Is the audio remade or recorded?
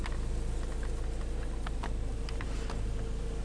recorded